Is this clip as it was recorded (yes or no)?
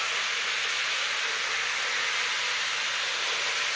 yes